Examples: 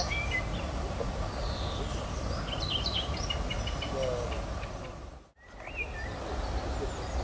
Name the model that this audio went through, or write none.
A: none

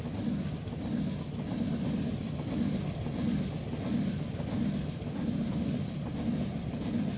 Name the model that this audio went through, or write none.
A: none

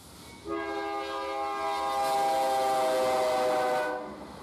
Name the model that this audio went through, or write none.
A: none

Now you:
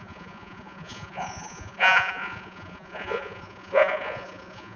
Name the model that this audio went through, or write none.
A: vocoder, Vocos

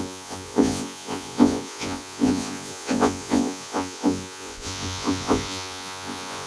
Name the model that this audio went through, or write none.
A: vocoder, Vocos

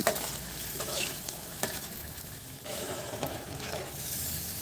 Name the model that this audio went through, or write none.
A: autoencoder, DAC-VAE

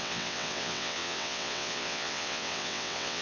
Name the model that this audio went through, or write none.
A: vocoder, WaveNeXt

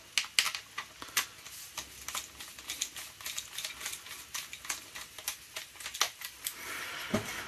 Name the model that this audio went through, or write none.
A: none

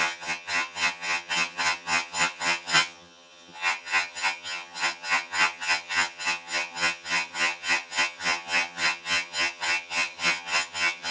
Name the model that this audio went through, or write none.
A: vocoder, HiFi-GAN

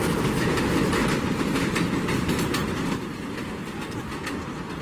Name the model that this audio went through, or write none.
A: none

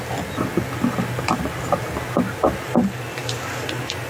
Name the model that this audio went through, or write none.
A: vocoder, BigVGAN v2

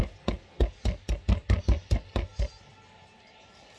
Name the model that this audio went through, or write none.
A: none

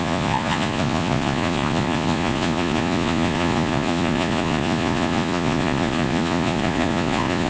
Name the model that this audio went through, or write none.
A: vocoder, Vocos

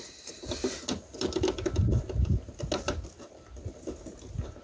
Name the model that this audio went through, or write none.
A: none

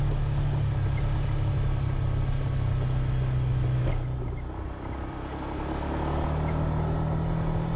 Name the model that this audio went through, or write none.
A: none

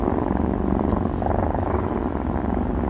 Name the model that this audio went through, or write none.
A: none